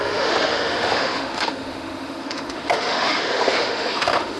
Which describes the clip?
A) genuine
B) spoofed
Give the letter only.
B